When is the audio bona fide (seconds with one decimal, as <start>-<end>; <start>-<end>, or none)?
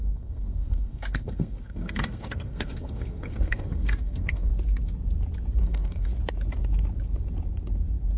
4.5-5.6; 6.1-8.2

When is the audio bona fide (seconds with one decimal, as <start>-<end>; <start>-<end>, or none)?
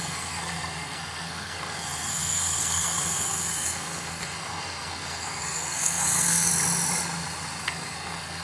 6.5-7.6